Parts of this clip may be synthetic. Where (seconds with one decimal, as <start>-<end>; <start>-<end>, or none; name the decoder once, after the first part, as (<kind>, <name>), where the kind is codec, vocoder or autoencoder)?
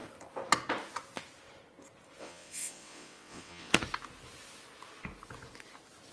2.2-3.7 (vocoder, WaveNeXt)